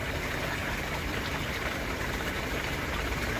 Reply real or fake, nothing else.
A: real